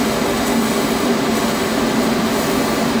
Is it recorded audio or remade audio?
recorded